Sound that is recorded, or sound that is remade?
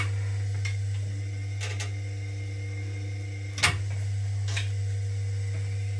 recorded